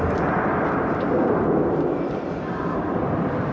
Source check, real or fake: real